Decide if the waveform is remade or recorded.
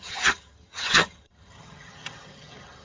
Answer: remade